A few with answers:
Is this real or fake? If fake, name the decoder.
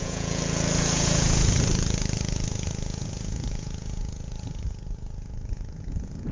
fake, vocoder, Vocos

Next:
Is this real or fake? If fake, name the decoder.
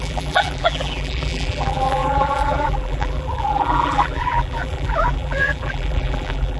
fake, vocoder, BigVGAN v2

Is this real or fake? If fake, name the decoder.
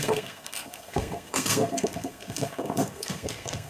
fake, codec, SNAC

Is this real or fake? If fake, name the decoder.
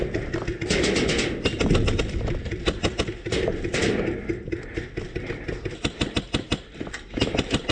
real